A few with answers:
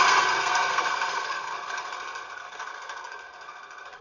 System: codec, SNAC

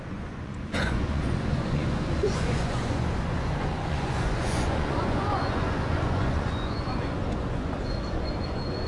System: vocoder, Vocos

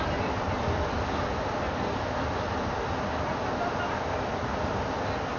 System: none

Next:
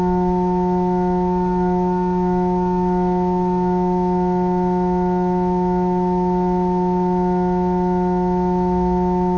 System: none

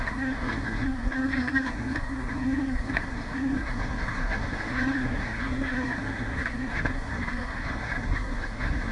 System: codec, SNAC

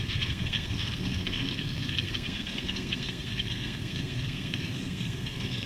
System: codec, SNAC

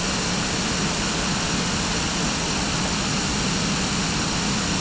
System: none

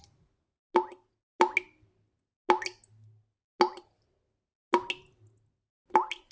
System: none